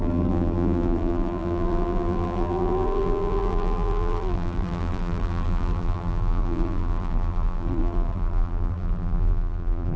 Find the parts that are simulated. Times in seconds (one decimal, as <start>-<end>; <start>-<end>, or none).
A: 0.0-10.0